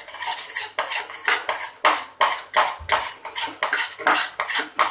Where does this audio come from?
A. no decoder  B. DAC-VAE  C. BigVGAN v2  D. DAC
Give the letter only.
A